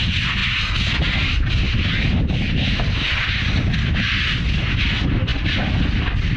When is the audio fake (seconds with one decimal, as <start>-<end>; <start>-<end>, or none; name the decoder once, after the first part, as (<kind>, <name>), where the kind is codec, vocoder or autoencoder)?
none